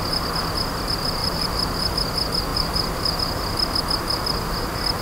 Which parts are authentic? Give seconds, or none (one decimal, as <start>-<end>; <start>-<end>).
0.0-1.2; 1.9-2.5; 3.2-5.0